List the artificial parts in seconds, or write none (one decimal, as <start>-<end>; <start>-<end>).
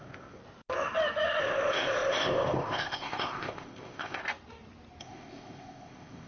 0.0-0.4; 1.4-4.2; 5.0-6.3